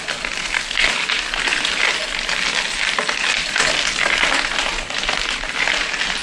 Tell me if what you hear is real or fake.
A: real